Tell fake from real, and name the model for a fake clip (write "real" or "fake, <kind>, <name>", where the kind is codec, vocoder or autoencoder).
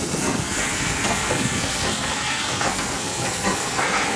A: fake, codec, SNAC